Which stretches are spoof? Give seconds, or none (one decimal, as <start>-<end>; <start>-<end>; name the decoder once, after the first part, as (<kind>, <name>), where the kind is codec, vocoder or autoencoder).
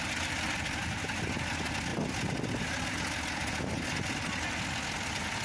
none